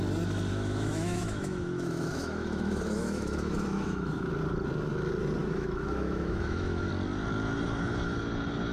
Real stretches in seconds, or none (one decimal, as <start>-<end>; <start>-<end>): 0.0-0.5; 4.3-5.4; 6.9-8.7

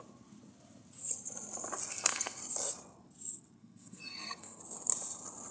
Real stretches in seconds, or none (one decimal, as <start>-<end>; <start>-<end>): 0.0-1.9; 2.4-3.6; 4.6-5.5

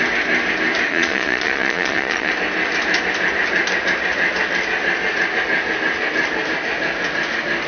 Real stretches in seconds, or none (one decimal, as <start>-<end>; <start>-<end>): 0.0-0.9; 2.3-7.7